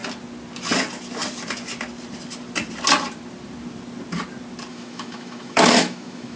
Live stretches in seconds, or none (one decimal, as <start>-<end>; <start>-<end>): 0.0-4.7